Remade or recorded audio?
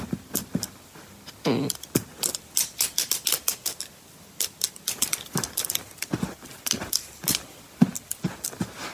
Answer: recorded